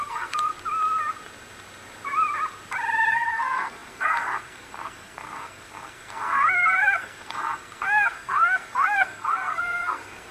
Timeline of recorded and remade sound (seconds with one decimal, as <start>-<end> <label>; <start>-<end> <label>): 0.0-0.5 remade; 0.5-3.1 recorded; 3.1-10.3 remade